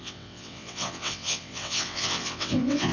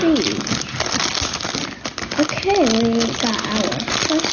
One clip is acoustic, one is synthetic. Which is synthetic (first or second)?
first